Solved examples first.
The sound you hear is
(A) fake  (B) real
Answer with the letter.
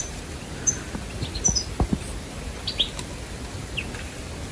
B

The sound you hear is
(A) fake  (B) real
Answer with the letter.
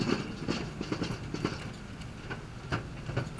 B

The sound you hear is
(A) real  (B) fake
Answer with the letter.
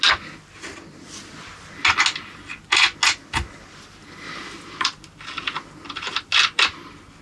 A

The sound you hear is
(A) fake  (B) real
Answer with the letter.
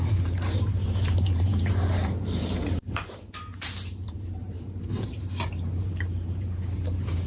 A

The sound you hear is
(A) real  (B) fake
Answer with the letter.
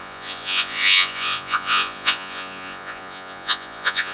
B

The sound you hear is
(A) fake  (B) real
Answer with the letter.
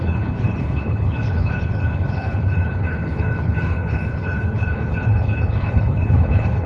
A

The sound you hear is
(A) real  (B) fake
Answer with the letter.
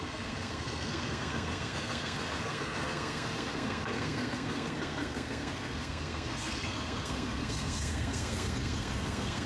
B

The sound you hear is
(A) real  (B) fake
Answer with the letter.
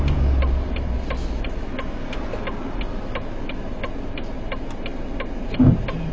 A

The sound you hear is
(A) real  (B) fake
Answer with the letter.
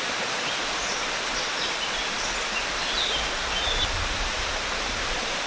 A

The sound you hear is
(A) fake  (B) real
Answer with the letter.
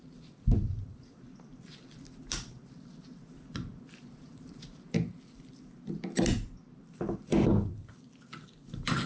A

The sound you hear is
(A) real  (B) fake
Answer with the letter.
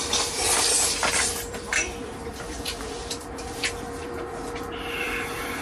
B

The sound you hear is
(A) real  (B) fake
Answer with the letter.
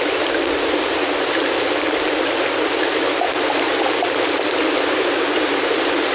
A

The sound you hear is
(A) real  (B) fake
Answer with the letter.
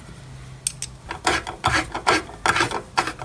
A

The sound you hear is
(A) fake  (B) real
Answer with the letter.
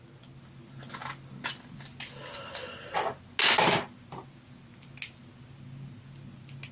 B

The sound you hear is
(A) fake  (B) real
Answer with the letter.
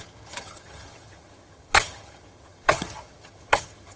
A